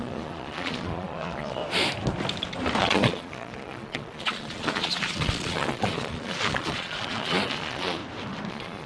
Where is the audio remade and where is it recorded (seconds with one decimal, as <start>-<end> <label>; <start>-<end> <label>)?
0.0-1.6 remade; 1.6-2.8 recorded; 2.8-8.0 remade; 8.0-8.5 recorded; 8.5-8.9 remade